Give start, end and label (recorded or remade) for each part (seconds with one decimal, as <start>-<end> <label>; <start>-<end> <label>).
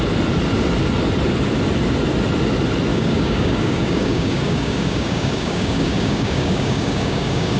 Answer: 0.0-2.9 recorded; 2.9-7.6 remade